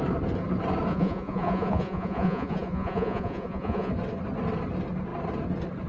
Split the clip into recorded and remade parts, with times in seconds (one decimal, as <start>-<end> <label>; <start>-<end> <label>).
0.0-0.9 recorded; 0.9-3.9 remade; 3.9-5.9 recorded